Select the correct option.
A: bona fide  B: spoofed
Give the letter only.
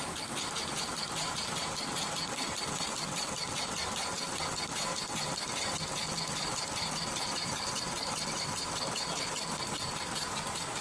A